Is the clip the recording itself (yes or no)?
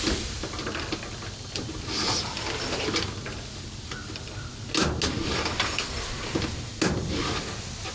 yes